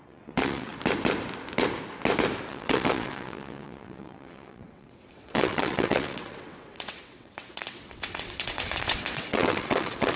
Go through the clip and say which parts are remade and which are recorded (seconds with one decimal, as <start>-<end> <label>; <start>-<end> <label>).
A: 0.0-0.7 remade; 0.7-2.5 recorded; 2.5-10.2 remade